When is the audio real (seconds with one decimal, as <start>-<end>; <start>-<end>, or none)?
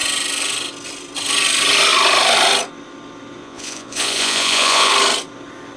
0.0-3.4; 4.9-5.8